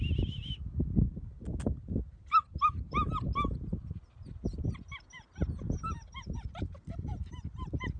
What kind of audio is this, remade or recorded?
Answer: recorded